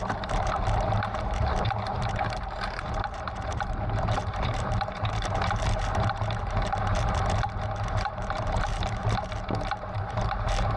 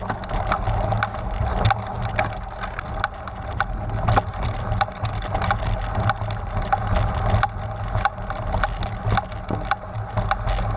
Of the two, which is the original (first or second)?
second